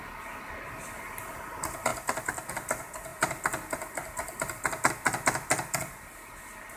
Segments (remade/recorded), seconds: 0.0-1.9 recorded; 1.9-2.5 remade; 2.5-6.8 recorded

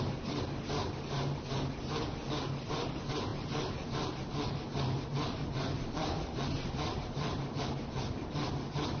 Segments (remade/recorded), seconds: 0.0-0.8 recorded; 0.8-1.4 remade; 1.4-3.3 recorded; 3.3-7.6 remade; 7.6-9.0 recorded

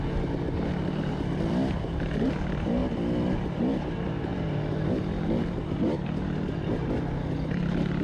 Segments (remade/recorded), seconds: 0.0-2.8 recorded; 2.8-3.6 remade; 3.6-8.0 recorded

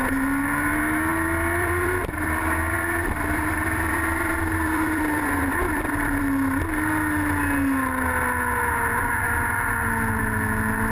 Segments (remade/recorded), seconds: 0.0-1.1 recorded; 1.1-6.2 remade; 6.2-10.9 recorded